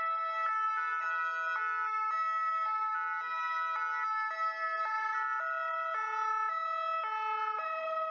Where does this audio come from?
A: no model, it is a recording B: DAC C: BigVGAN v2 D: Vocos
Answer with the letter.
A